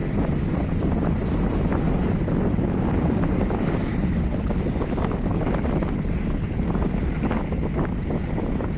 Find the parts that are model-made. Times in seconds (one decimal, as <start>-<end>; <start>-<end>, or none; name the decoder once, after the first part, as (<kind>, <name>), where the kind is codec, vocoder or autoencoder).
none